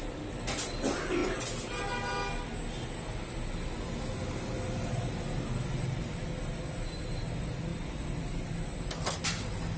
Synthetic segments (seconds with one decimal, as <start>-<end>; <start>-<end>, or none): none